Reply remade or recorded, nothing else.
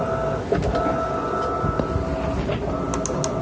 recorded